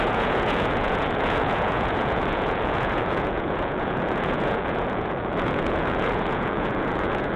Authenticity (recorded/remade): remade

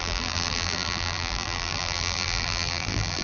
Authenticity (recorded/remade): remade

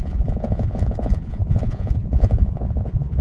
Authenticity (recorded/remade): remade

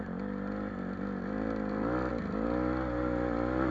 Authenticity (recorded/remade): recorded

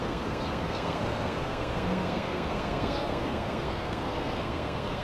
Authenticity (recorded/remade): remade